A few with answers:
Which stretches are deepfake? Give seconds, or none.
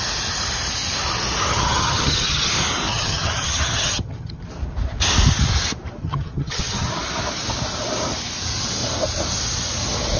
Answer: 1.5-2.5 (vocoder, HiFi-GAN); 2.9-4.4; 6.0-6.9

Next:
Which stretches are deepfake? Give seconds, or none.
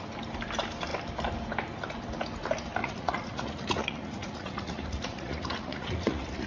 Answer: 2.8-6.5 (vocoder, Vocos)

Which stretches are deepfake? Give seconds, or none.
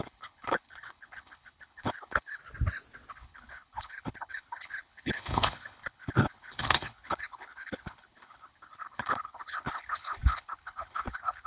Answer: 0.0-2.4 (codec, HILCodec); 3.1-11.5